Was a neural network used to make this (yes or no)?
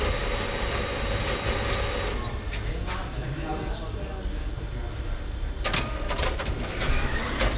no